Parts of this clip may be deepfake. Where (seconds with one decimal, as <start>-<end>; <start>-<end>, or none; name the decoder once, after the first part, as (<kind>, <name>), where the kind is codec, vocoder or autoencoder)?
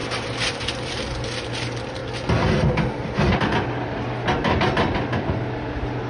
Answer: 0.0-2.0 (vocoder, BigVGAN v2)